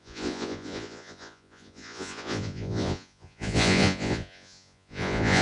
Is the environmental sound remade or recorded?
remade